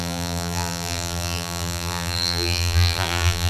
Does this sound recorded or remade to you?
remade